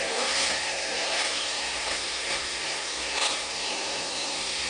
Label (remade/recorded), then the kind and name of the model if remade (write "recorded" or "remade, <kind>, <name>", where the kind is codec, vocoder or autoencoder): remade, codec, SNAC